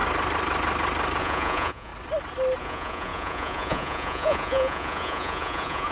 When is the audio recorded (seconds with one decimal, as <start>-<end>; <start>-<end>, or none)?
0.0-1.2; 1.9-2.6